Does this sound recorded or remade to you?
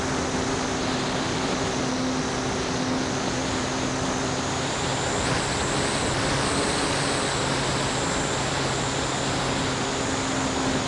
recorded